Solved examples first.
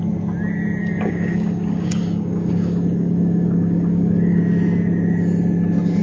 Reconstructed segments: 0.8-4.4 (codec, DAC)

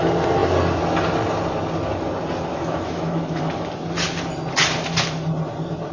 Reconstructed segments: 2.5-3.4 (autoencoder, DAC-VAE)

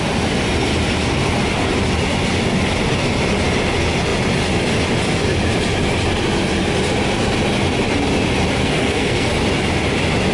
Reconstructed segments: 8.6-9.3 (codec, SNAC)